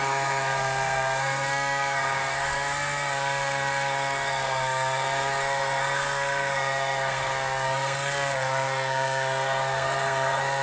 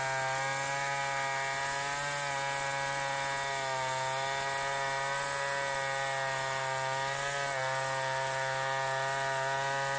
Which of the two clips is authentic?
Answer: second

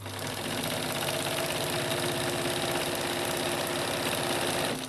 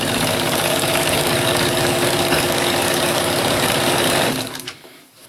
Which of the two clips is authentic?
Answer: first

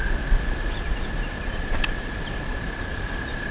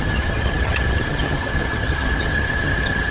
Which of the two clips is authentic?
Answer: first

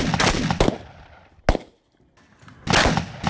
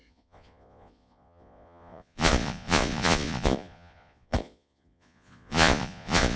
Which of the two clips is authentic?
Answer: first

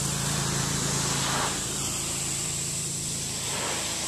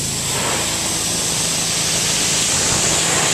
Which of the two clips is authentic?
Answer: second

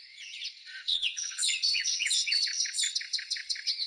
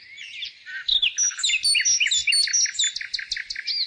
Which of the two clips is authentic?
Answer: second